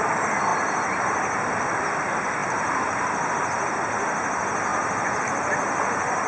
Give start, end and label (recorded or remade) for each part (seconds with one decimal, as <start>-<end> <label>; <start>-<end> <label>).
0.0-6.3 recorded